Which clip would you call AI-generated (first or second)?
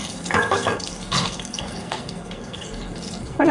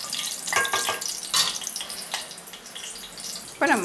first